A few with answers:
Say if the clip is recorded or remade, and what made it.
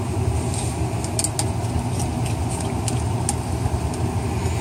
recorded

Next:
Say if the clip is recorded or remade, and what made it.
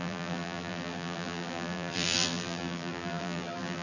remade, vocoder, BigVGAN v2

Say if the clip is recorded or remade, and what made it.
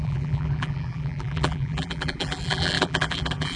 remade, vocoder, BigVGAN v2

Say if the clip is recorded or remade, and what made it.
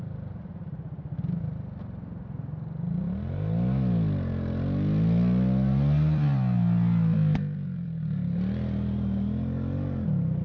recorded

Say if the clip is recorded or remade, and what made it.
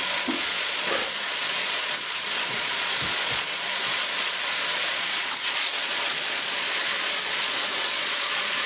remade, vocoder, Vocos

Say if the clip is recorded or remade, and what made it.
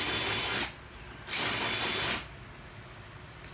recorded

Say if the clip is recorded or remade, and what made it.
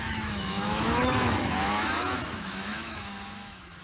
remade, autoencoder, DAC-VAE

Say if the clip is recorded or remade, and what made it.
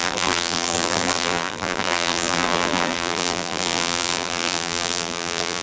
remade, vocoder, BigVGAN v2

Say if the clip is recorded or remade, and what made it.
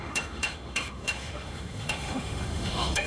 remade, autoencoder, DAC-VAE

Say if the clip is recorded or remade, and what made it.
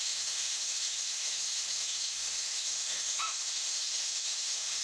remade, autoencoder, DAC-VAE